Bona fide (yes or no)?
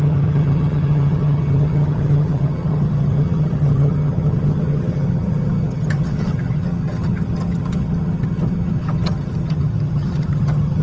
no